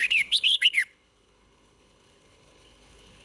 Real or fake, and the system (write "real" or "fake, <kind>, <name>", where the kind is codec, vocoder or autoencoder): fake, codec, HILCodec